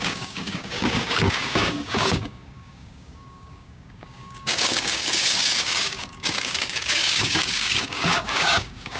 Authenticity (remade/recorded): remade